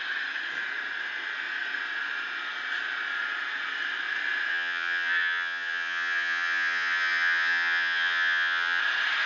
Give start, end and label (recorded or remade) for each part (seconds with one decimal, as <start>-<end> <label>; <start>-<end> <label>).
0.0-4.5 recorded; 4.5-8.8 remade; 8.8-9.3 recorded